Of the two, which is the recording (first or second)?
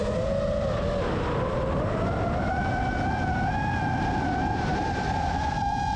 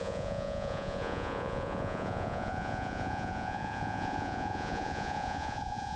first